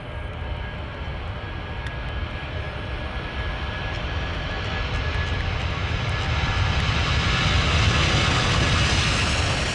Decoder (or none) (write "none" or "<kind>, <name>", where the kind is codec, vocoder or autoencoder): none